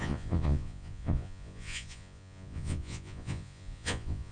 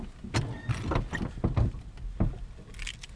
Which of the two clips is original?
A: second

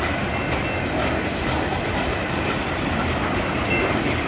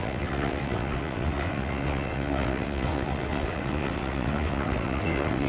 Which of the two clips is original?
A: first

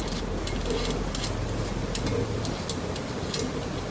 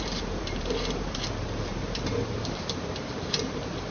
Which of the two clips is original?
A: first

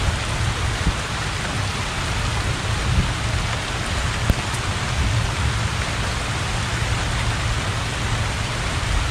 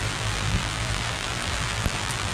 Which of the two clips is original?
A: first